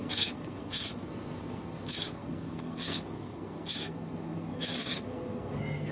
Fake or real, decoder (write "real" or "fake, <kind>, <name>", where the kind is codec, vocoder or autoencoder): fake, codec, SNAC